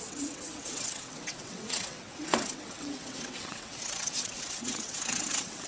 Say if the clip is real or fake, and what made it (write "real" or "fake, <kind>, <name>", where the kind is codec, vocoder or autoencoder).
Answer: fake, vocoder, WaveNeXt